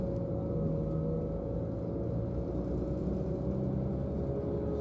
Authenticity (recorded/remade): recorded